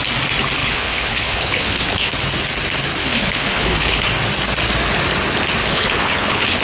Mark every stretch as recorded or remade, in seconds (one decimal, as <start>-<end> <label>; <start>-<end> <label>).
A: 0.0-0.6 recorded; 0.6-2.1 remade; 2.1-3.0 recorded; 3.0-4.1 remade; 4.1-5.6 recorded; 5.6-6.6 remade